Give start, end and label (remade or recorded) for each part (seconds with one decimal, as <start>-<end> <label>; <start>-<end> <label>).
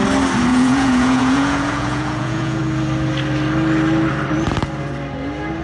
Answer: 0.0-0.5 recorded; 0.5-2.6 remade; 2.6-5.6 recorded